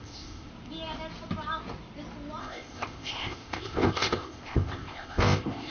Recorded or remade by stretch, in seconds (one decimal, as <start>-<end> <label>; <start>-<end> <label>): 0.0-0.5 remade; 0.5-2.4 recorded; 2.4-5.7 remade